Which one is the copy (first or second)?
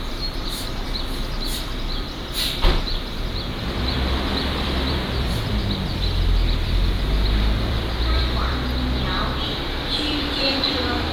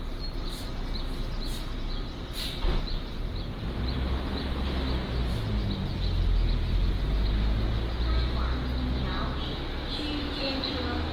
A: first